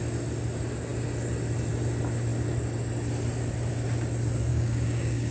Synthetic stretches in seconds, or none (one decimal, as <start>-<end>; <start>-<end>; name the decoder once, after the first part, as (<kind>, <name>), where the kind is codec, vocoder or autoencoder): 4.5-5.3 (codec, DAC)